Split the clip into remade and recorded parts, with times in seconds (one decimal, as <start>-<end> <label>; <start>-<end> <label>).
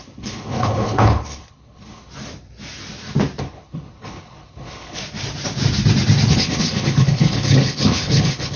0.0-2.1 remade; 2.1-3.4 recorded; 3.4-5.0 remade; 5.0-6.3 recorded; 6.3-8.6 remade